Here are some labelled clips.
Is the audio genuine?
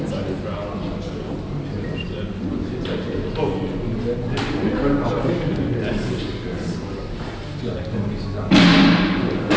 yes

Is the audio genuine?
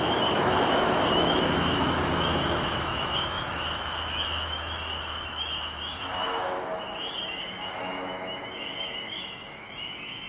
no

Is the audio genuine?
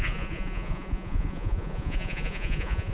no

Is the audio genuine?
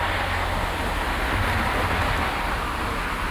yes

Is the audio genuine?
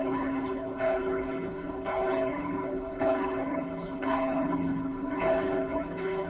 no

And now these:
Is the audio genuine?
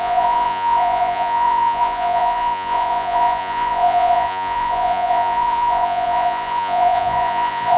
no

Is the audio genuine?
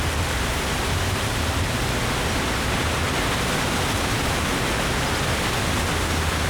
yes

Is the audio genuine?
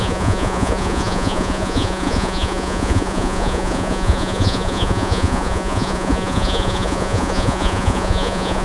no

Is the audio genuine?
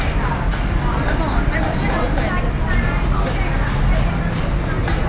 yes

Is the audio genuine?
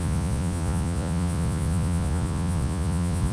no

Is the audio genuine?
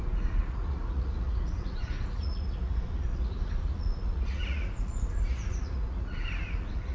no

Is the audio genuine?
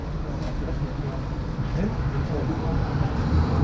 yes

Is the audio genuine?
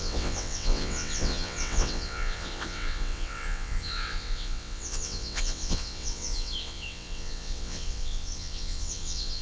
no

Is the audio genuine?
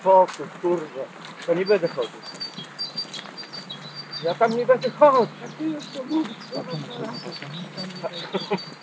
yes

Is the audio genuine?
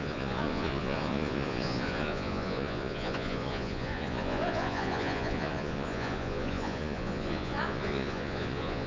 no